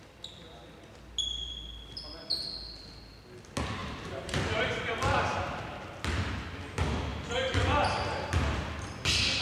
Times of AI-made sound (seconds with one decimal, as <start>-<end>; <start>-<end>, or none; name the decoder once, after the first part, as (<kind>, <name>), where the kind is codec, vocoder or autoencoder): 3.8-4.7 (vocoder, BigVGAN v2)